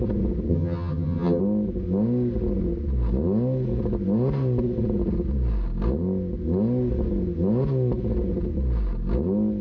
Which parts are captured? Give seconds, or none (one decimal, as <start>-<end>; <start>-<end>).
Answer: 0.0-0.5; 1.4-9.6